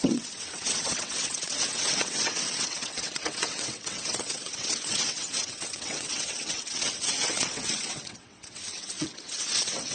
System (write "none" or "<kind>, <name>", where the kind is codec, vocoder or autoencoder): vocoder, WaveNeXt